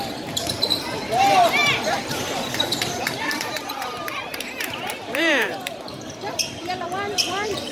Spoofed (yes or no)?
yes